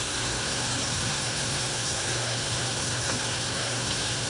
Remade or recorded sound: remade